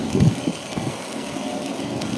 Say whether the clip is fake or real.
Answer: fake